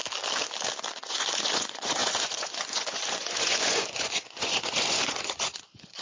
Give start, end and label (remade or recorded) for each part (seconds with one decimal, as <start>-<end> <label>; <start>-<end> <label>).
0.0-1.1 recorded; 1.1-6.0 remade